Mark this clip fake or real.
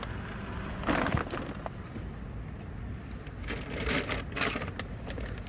real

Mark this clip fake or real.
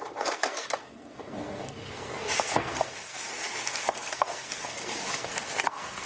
fake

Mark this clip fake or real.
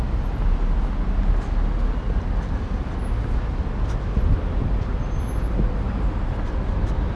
real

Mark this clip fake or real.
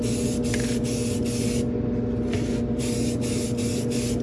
real